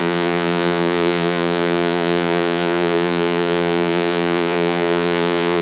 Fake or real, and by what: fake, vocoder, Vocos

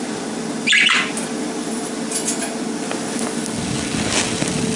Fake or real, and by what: real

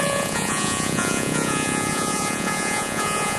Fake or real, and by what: fake, vocoder, Vocos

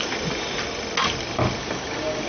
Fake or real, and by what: real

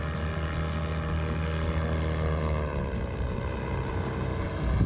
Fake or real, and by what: real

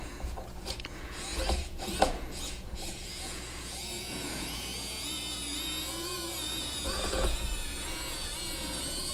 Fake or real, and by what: fake, vocoder, Vocos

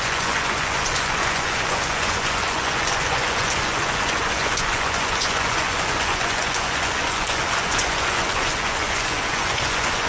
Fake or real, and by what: fake, vocoder, Vocos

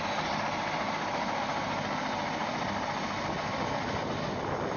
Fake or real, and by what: real